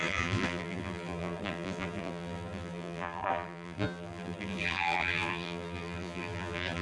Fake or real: fake